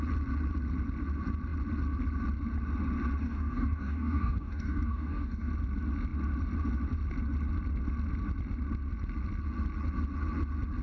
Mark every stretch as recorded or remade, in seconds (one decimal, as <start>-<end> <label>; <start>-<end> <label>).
0.0-3.2 recorded; 3.2-5.5 remade; 5.5-10.8 recorded